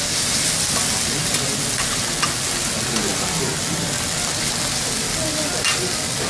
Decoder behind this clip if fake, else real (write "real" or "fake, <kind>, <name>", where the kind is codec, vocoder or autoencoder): real